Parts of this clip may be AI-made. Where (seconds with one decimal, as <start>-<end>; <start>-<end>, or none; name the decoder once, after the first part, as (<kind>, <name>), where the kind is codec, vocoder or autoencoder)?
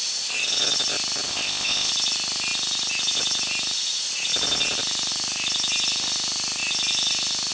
1.3-1.9 (codec, ZipCodec)